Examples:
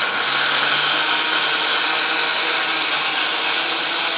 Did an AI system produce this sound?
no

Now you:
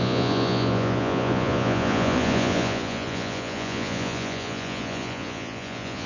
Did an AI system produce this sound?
yes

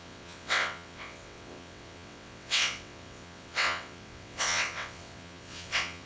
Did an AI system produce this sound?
yes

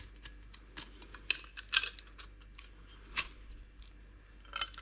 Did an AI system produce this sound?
no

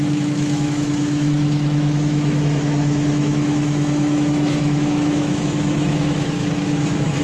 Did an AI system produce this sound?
yes